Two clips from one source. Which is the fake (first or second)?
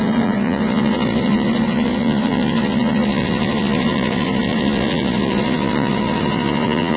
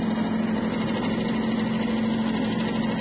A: first